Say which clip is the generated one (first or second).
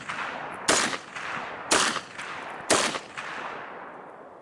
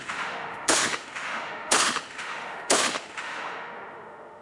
second